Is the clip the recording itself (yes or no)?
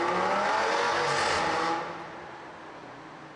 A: yes